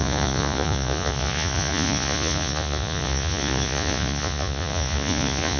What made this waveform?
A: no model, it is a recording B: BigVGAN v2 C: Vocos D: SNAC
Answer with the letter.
C